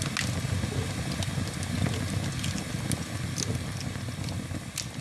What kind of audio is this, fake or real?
real